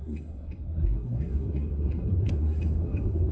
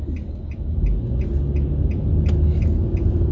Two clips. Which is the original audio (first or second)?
second